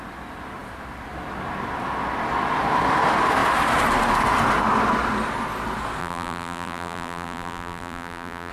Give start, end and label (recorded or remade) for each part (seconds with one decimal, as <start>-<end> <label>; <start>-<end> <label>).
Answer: 0.0-6.0 recorded; 6.0-8.5 remade

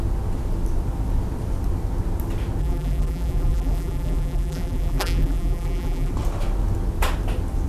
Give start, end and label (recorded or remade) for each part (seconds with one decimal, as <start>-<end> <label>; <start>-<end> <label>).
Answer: 0.0-2.6 recorded; 2.6-6.1 remade; 6.1-7.7 recorded

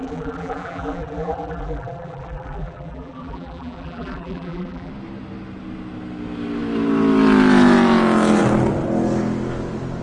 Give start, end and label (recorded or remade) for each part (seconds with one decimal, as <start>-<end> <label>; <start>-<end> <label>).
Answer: 0.0-4.9 remade; 4.9-10.0 recorded